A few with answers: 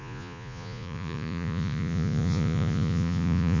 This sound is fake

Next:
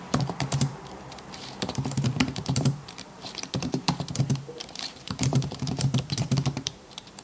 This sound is fake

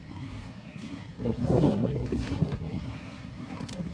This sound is fake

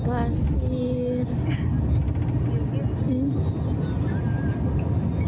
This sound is real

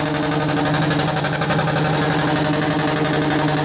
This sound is real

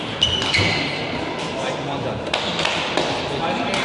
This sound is real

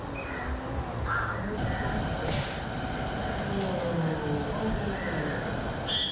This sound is real